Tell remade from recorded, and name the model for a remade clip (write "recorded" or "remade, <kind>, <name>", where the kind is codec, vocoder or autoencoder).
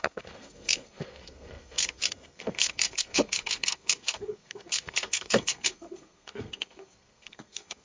remade, codec, SNAC